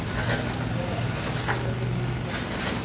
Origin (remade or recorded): recorded